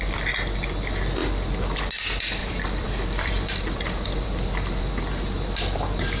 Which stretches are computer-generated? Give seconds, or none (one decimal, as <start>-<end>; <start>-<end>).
2.4-4.8